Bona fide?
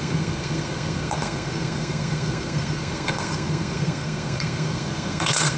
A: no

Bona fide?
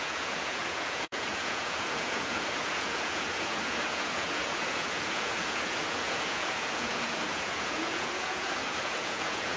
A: no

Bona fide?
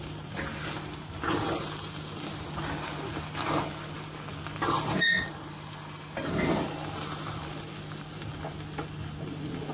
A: yes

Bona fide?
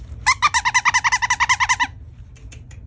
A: yes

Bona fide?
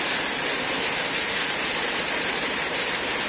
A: yes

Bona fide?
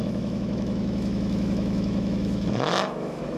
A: no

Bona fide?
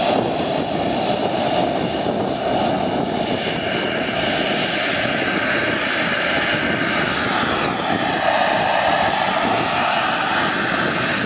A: yes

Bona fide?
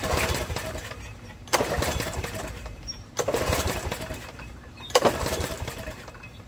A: no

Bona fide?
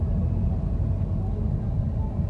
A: yes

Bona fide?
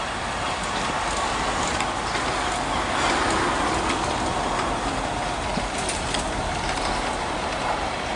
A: yes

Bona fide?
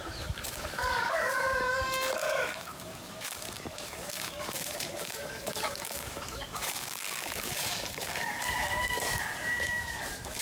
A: no